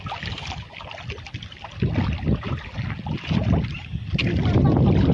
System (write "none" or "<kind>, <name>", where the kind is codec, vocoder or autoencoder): none